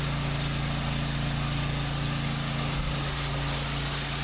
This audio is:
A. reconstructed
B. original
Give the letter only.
B